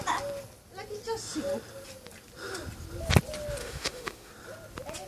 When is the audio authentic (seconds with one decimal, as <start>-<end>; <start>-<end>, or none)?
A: 0.0-3.6; 4.3-5.1